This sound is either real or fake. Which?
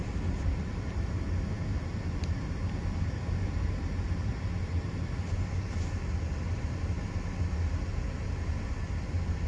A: real